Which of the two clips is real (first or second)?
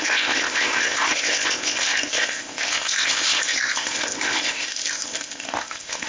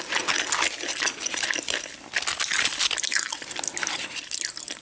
second